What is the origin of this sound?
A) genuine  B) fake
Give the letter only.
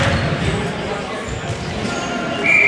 A